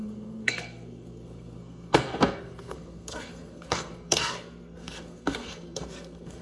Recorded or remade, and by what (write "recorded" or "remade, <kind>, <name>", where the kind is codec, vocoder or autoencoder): remade, codec, SNAC